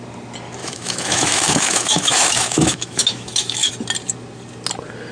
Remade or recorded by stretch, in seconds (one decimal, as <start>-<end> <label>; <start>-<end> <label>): 0.0-0.6 recorded; 0.6-3.7 remade; 3.7-5.1 recorded